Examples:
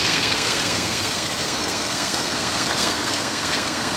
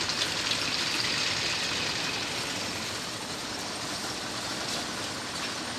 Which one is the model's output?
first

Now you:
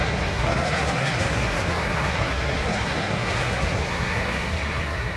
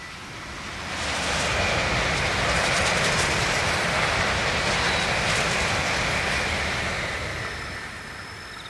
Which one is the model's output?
first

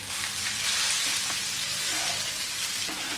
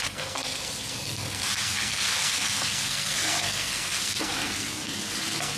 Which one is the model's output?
second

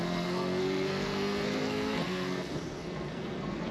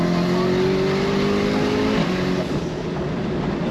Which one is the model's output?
first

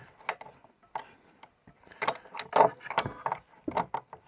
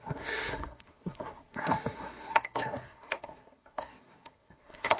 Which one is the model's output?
second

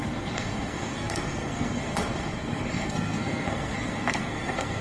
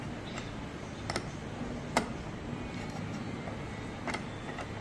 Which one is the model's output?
first